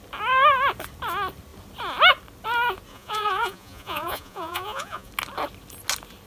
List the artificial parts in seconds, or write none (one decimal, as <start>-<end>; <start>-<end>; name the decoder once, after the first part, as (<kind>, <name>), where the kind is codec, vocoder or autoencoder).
2.9-5.1 (vocoder, Vocos)